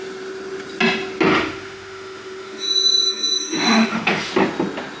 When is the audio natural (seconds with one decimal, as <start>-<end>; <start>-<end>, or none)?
0.0-1.3; 4.3-5.0